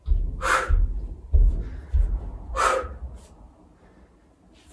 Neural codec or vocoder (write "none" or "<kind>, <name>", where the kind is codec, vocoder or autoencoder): none